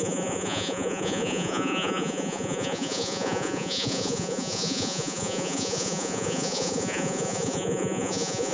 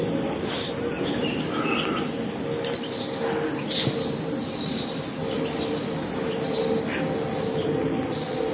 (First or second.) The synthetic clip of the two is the first